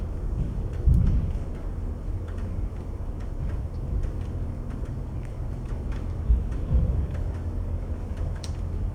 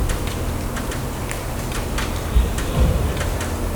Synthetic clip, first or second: first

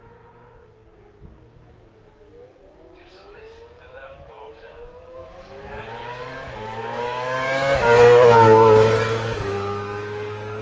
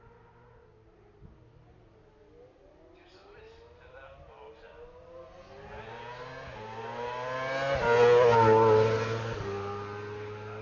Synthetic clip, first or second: first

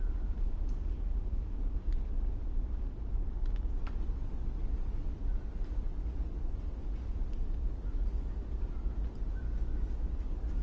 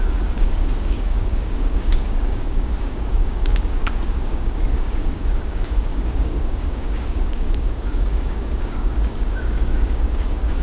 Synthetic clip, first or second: second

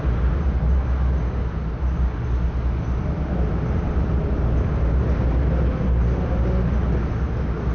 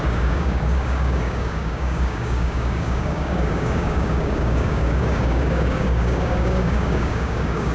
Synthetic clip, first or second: second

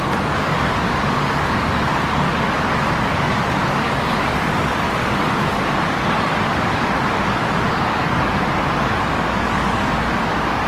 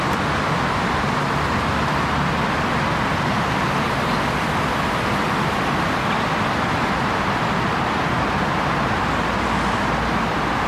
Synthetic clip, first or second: first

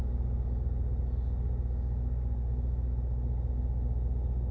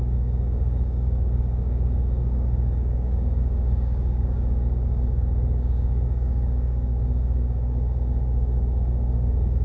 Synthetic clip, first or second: second